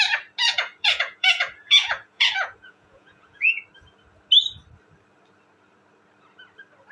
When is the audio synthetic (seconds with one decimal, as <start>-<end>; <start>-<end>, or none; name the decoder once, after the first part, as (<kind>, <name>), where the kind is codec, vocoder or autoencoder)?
0.4-3.6 (vocoder, Vocos)